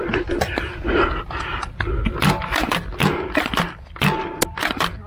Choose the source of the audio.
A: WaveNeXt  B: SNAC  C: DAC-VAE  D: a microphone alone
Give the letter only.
D